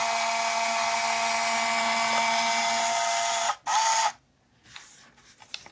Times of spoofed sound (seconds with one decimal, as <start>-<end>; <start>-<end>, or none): none